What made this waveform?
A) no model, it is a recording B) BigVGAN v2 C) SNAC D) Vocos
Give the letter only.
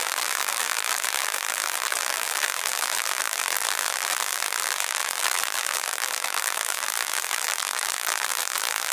B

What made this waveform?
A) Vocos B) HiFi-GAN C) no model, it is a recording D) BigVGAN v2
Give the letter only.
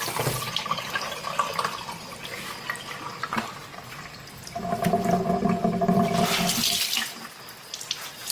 D